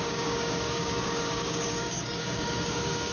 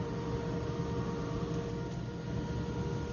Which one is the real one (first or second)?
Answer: second